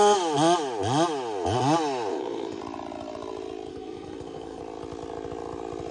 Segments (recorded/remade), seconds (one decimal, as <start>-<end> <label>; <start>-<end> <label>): 0.0-2.1 recorded; 2.1-2.6 remade; 2.6-3.7 recorded; 3.7-4.6 remade; 4.6-5.9 recorded